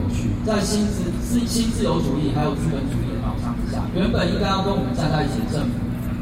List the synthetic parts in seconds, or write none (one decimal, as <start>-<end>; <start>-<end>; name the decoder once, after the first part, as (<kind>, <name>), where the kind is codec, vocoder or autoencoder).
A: none